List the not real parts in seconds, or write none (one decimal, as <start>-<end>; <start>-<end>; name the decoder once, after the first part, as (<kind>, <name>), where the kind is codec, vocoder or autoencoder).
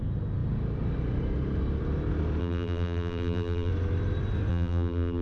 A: 2.4-3.7 (vocoder, BigVGAN v2); 4.5-5.2